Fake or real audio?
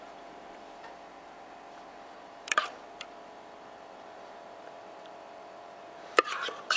fake